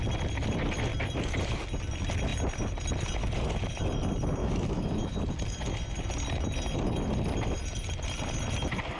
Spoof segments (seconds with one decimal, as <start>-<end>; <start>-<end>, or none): 4.4-5.2